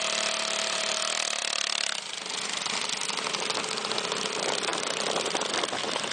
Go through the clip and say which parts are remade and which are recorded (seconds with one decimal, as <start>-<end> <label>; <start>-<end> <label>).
0.0-6.1 recorded